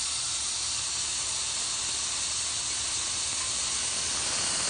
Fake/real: real